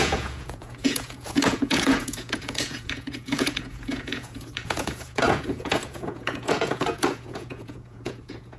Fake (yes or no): yes